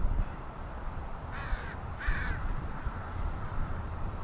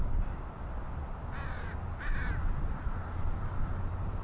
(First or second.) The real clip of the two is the second